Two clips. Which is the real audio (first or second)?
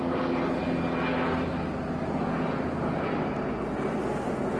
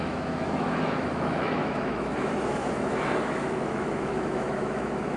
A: first